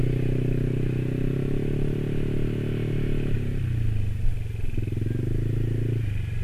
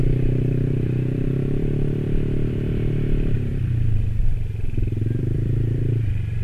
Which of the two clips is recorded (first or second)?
first